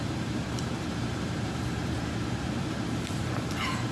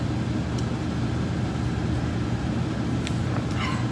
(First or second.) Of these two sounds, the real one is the second